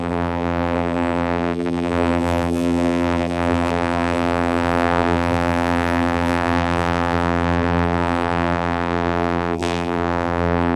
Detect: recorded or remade remade